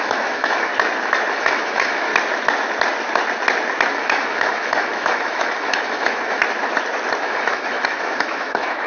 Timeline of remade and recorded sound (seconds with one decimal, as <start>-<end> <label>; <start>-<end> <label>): 0.0-0.7 remade; 0.7-1.3 recorded; 1.3-2.1 remade; 2.1-3.9 recorded; 3.9-6.4 remade; 6.4-7.2 recorded; 7.2-8.9 remade